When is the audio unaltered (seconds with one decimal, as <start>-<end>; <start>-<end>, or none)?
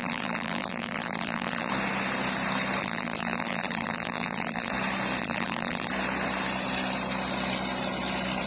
1.7-2.8; 4.7-5.2; 5.9-8.5